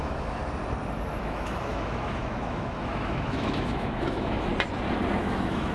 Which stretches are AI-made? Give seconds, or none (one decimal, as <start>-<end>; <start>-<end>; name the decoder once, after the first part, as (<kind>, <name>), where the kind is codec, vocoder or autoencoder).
0.0-0.4 (autoencoder, DAC-VAE); 1.2-4.5; 5.2-5.7

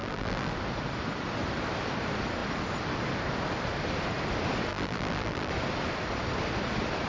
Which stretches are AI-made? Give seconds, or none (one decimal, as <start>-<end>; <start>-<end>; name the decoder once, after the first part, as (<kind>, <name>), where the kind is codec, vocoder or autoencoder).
0.0-0.5 (vocoder, BigVGAN v2); 4.7-5.5

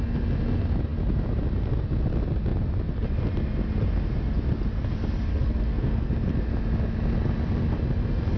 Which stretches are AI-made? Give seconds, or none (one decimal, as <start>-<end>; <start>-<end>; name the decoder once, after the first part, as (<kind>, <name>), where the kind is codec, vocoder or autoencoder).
5.3-6.1 (codec, SNAC)

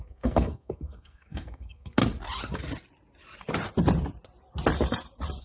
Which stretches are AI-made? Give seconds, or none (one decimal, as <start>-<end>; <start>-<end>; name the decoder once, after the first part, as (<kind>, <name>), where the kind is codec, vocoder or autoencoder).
0.0-2.0 (codec, SNAC)